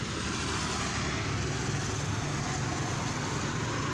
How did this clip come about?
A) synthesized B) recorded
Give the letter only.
B